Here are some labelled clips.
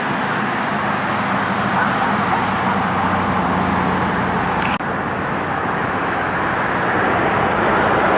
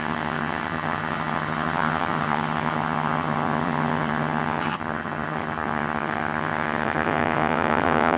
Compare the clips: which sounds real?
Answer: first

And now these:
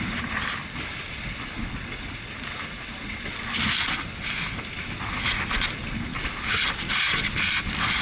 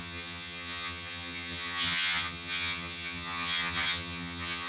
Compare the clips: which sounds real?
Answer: first